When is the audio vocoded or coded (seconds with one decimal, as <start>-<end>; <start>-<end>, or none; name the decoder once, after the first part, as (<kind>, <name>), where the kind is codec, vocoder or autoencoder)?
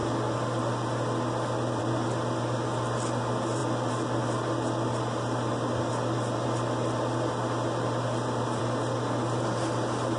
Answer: 3.6-8.6 (vocoder, BigVGAN v2)